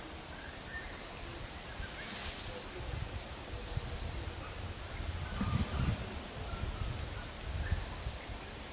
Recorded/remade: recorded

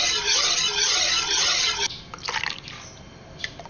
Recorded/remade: recorded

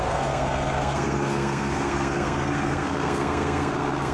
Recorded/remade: remade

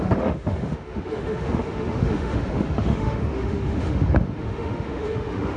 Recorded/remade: remade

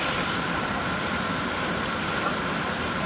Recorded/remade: recorded